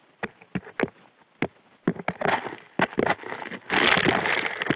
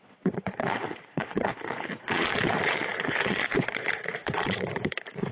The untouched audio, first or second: first